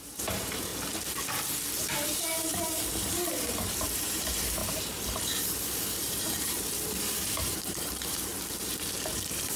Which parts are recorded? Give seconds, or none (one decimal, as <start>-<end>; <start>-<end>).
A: 0.7-1.7